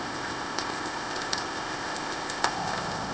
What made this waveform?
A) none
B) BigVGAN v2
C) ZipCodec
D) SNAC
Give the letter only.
C